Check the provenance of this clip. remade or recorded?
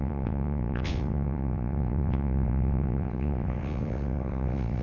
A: remade